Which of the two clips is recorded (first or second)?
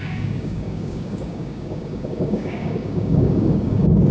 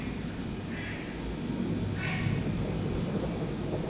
second